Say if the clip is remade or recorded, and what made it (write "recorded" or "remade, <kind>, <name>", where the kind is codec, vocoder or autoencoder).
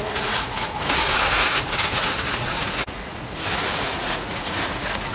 remade, vocoder, Vocos